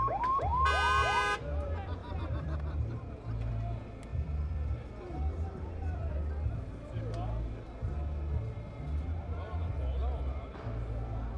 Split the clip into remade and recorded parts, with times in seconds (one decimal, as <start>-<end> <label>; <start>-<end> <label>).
0.0-2.0 recorded; 2.0-3.5 remade; 3.5-4.1 recorded; 4.1-6.1 remade; 6.1-11.4 recorded